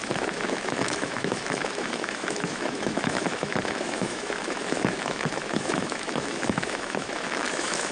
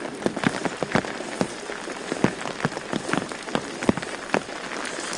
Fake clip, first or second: first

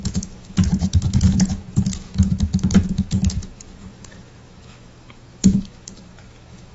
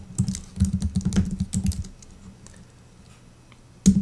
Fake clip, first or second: first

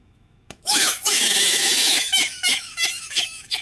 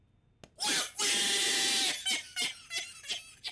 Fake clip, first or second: first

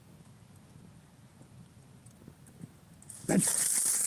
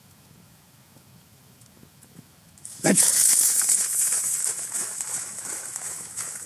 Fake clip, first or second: second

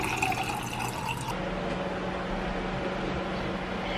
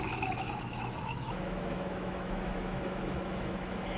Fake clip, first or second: second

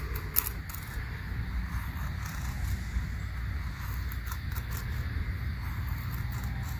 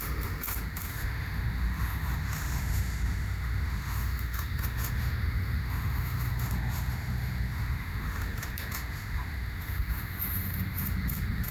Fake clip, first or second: second